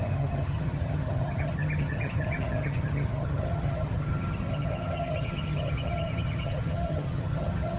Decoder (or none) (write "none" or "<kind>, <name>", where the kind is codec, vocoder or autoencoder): vocoder, HiFi-GAN